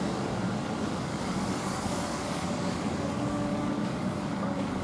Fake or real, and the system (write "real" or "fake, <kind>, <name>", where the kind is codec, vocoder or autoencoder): fake, codec, DAC